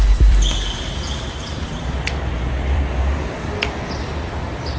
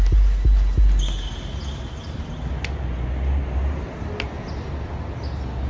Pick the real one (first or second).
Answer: second